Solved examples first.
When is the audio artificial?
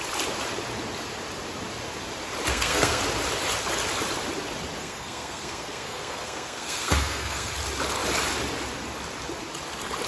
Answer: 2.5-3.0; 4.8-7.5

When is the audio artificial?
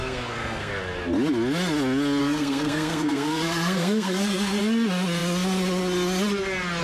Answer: 0.0-0.7; 2.2-4.6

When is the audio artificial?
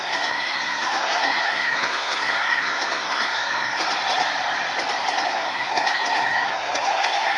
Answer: 0.0-3.8; 5.1-7.4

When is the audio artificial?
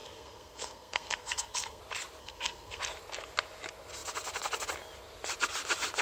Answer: 0.0-1.8; 2.2-2.8